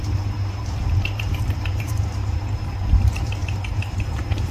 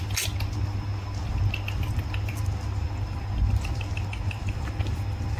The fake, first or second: first